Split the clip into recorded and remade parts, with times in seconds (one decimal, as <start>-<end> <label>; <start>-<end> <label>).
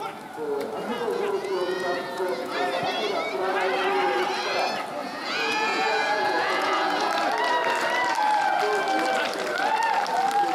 0.0-0.9 recorded; 0.9-2.6 remade; 2.6-5.0 recorded; 5.0-7.1 remade; 7.1-10.5 recorded